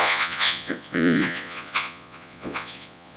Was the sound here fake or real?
fake